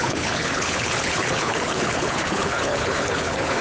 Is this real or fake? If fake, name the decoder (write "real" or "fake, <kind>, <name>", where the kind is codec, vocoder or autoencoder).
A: fake, codec, HILCodec